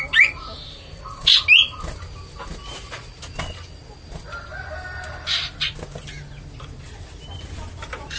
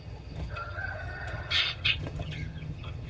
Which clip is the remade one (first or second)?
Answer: second